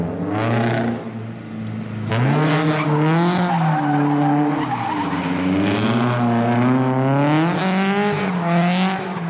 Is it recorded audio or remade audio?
recorded